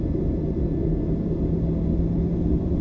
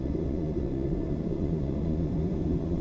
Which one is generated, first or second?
second